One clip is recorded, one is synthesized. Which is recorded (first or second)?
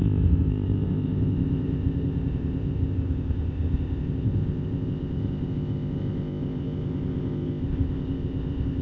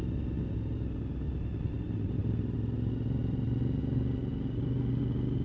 second